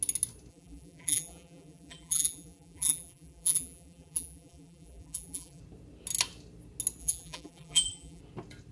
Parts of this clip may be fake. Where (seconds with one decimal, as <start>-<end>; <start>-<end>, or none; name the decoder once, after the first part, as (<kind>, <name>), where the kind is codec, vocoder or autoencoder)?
0.5-5.6 (vocoder, BigVGAN v2); 7.0-8.2